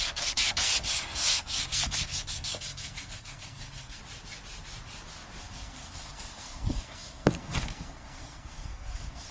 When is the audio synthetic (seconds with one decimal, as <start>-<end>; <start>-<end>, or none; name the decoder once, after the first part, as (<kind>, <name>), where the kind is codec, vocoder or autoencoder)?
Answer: 0.0-4.0 (codec, SNAC); 5.4-9.3